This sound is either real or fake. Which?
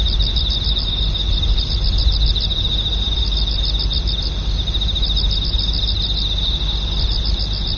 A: real